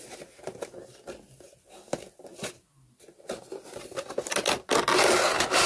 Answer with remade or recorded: recorded